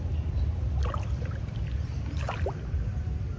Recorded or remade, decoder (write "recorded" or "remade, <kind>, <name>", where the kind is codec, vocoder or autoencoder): recorded